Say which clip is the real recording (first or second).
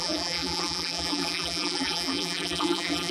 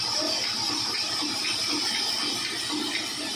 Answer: second